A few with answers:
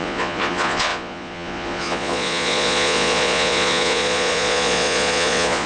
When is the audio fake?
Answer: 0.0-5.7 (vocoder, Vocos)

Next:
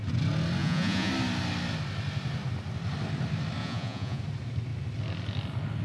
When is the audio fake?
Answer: 0.6-1.1 (vocoder, Vocos); 3.6-4.2

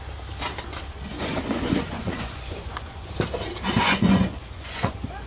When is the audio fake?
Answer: 1.1-3.1 (vocoder, Vocos); 3.8-5.3